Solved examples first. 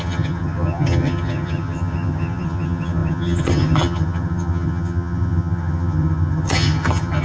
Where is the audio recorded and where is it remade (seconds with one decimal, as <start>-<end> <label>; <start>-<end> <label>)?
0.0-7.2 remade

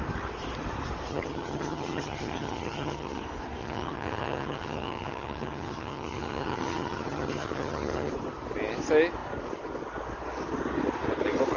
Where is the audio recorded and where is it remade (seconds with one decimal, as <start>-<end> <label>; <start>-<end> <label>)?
0.0-1.1 recorded; 1.1-3.2 remade; 3.2-3.6 recorded; 3.6-8.1 remade; 8.1-11.6 recorded

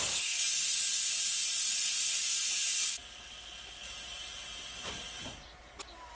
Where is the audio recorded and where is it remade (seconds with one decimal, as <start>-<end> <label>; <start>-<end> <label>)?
0.0-6.1 recorded

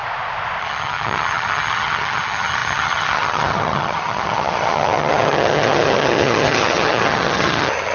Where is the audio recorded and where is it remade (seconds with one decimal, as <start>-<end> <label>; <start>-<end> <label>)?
0.0-0.6 recorded; 0.6-7.9 remade

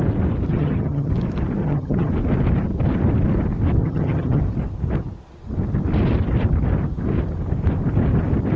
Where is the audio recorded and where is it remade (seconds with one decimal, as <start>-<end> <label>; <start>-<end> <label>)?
0.0-0.5 recorded; 0.5-1.1 remade; 1.1-1.6 recorded; 1.6-2.1 remade; 2.1-3.8 recorded; 3.8-4.4 remade; 4.4-8.6 recorded